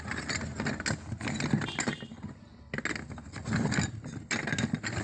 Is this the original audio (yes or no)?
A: yes